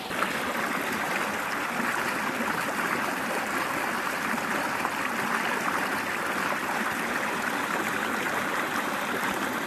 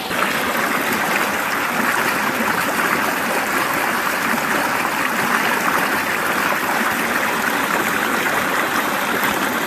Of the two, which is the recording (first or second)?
second